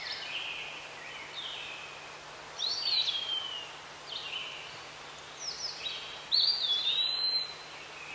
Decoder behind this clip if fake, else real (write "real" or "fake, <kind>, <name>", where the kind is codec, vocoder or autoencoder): real